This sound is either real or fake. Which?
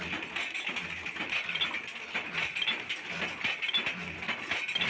real